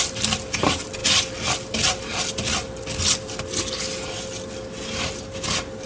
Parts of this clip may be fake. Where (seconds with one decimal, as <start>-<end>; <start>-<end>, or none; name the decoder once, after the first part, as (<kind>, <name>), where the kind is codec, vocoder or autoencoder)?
none